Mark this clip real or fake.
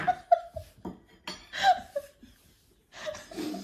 real